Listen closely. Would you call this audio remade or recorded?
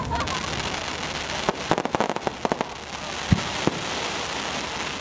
recorded